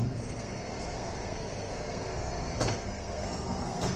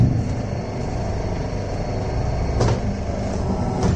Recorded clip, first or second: second